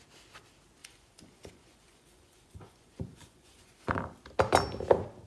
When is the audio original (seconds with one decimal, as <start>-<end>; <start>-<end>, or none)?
0.0-0.8; 4.0-5.3

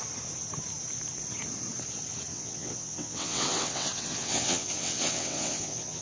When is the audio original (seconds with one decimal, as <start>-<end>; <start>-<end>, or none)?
0.0-2.3

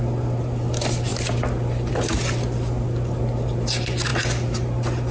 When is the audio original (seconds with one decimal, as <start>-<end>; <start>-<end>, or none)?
0.0-5.1